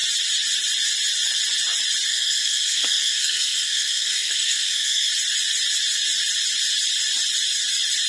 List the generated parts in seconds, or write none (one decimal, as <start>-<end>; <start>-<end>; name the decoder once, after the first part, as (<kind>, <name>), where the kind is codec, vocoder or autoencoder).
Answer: 2.1-5.1 (codec, SNAC)